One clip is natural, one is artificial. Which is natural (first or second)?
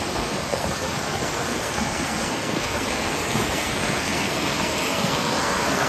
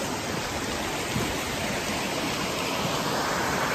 second